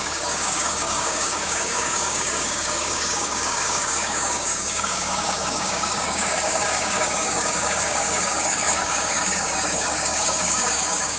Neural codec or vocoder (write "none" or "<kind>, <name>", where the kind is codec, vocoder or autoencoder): codec, DAC